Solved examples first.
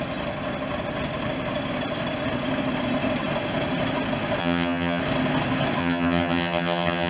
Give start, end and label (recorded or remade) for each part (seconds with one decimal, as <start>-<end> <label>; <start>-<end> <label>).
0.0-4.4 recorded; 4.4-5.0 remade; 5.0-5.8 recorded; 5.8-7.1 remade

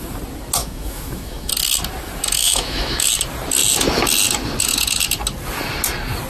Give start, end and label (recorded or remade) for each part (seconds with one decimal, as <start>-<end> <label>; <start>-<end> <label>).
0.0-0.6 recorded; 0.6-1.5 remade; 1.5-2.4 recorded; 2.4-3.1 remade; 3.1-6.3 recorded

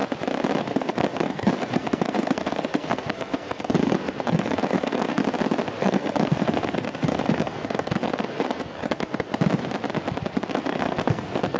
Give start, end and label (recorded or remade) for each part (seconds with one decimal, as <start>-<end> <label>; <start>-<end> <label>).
0.0-0.6 recorded; 0.6-5.2 remade; 5.2-5.8 recorded; 5.8-9.3 remade; 9.3-10.5 recorded; 10.5-11.6 remade